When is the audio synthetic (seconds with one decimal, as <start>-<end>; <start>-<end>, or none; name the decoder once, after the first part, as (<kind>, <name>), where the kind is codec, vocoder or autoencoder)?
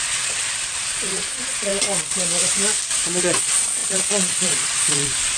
0.0-1.7 (vocoder, Vocos); 3.2-5.4